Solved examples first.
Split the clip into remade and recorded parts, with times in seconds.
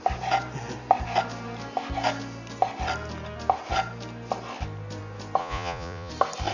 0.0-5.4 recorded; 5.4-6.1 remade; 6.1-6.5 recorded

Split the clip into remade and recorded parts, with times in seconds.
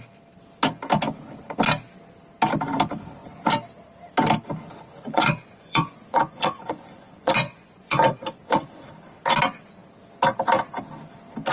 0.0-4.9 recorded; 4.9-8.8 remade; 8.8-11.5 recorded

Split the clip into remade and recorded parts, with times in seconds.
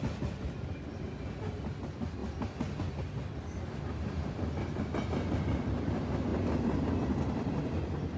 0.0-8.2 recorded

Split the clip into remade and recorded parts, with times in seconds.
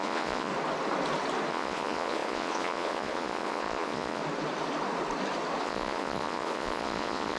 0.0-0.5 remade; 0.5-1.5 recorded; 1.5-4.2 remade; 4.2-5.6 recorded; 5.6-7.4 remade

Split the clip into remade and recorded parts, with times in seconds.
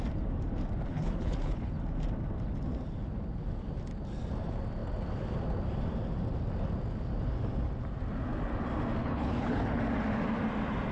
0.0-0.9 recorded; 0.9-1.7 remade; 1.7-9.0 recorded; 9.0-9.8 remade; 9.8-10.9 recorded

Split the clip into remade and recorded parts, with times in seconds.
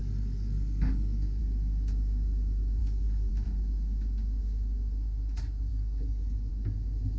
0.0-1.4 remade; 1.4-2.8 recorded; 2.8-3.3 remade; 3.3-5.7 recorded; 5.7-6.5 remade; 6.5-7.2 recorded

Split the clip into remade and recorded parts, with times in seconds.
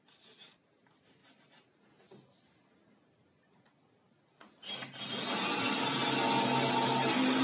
0.0-1.2 remade; 1.2-5.6 recorded; 5.6-6.0 remade; 6.0-7.4 recorded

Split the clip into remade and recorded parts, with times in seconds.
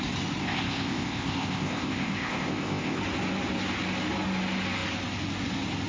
0.0-0.4 recorded; 0.4-3.0 remade; 3.0-5.9 recorded